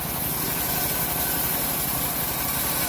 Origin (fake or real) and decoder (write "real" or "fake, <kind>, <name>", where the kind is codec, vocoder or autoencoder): real